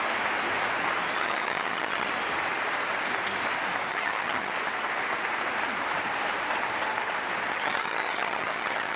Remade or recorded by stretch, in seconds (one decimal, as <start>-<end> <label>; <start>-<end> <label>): 0.0-1.2 recorded; 1.2-2.1 remade; 2.1-3.9 recorded; 3.9-4.5 remade; 4.5-7.5 recorded; 7.5-9.0 remade